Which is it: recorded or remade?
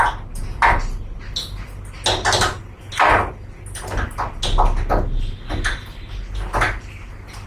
recorded